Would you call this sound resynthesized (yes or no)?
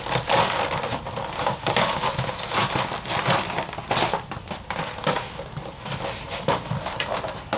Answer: no